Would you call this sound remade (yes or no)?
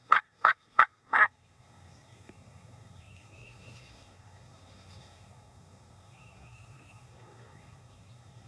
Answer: yes